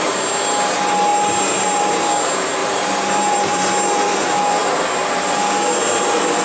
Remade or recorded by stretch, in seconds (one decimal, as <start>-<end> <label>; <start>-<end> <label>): 0.0-1.1 recorded; 1.1-1.9 remade; 1.9-2.6 recorded; 2.6-3.7 remade; 3.7-6.4 recorded

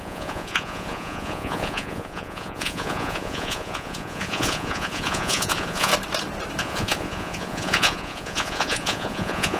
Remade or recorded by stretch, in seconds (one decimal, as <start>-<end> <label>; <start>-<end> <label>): 0.0-5.9 remade; 5.9-6.6 recorded; 6.6-9.6 remade

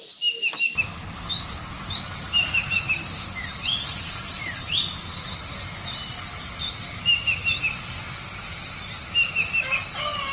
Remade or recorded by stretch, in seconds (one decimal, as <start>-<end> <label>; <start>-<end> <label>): 0.0-3.6 recorded; 3.6-5.5 remade; 5.5-10.3 recorded

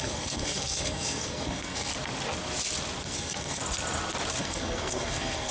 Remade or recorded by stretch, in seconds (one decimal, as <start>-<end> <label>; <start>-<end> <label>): 0.0-1.9 remade; 1.9-3.0 recorded; 3.0-3.6 remade; 3.6-4.4 recorded; 4.4-5.5 remade